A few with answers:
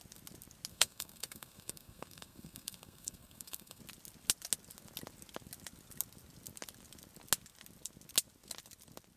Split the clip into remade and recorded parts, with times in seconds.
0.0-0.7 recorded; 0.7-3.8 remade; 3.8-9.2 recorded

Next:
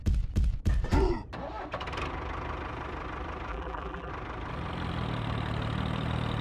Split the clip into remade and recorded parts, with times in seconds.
0.0-3.5 recorded; 3.5-4.1 remade; 4.1-6.4 recorded

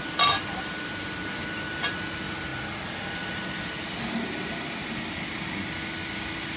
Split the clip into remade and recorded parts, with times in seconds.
0.0-6.6 recorded

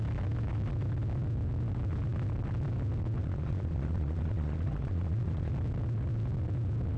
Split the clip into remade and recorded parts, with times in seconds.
0.0-3.2 recorded; 3.2-5.5 remade; 5.5-7.0 recorded

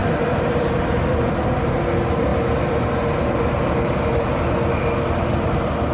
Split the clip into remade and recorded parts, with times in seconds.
0.0-0.8 remade; 0.8-5.9 recorded